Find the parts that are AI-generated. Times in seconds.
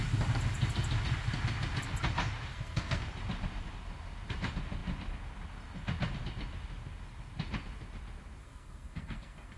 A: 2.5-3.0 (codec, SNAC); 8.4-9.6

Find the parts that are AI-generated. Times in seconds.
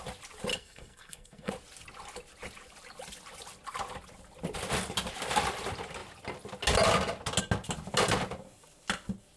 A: 0.5-1.5 (codec, SNAC)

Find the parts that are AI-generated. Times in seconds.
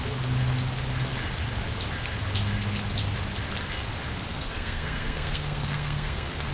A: 4.3-6.5 (codec, SNAC)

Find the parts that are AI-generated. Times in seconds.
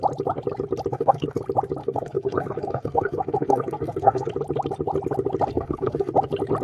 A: 0.9-1.4 (codec, SNAC); 1.8-4.3; 5.5-6.1